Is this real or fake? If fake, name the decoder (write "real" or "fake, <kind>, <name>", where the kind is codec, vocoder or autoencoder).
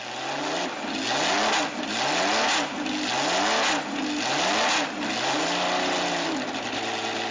real